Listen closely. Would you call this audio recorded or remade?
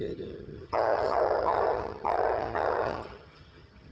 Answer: remade